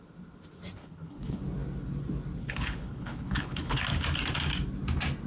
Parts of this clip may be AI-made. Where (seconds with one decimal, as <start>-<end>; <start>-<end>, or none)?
0.8-1.4; 2.4-3.8